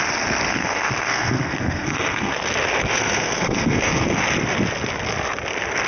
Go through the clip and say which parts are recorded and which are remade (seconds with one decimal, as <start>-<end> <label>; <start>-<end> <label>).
0.0-0.5 recorded; 0.5-2.5 remade; 2.5-2.9 recorded; 2.9-4.2 remade; 4.2-5.9 recorded